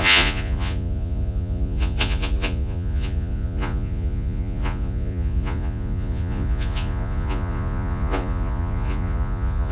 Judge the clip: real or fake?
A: fake